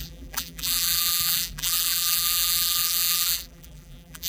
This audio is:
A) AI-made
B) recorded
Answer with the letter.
A